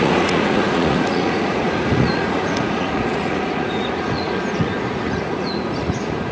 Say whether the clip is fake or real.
fake